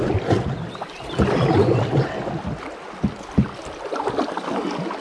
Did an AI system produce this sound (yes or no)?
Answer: no